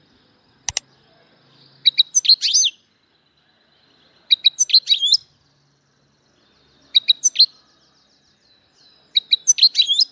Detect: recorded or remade recorded